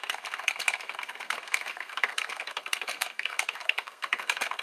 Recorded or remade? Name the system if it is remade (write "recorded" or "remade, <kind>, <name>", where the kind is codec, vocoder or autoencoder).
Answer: remade, codec, SNAC